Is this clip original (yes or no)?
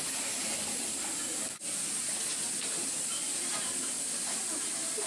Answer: yes